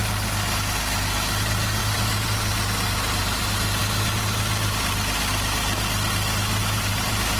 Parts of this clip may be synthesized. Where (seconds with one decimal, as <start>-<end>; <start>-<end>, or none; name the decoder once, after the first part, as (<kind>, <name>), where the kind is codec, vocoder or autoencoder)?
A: 1.8-3.8 (vocoder, BigVGAN v2); 6.6-7.4